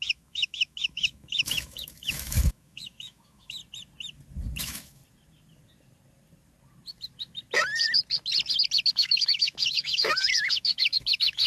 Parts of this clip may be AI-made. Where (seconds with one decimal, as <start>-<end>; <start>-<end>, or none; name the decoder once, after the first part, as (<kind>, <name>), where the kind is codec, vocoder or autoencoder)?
0.0-3.6 (autoencoder, DAC-VAE); 4.6-5.0; 8.9-11.5